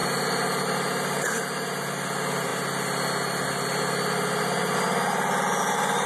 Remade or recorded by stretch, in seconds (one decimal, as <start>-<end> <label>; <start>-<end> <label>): 0.0-0.6 remade; 0.6-6.1 recorded